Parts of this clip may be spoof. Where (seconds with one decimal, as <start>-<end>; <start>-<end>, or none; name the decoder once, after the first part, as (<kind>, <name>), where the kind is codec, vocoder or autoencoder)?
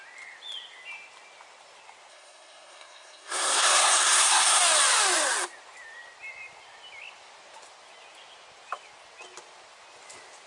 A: 2.1-4.6 (codec, SNAC)